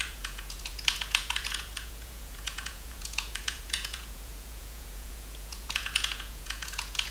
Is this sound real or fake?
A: fake